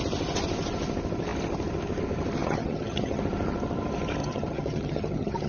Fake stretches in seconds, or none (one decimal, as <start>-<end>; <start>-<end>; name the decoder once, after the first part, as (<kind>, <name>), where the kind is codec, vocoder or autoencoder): 2.4-3.2 (vocoder, HiFi-GAN); 4.2-5.5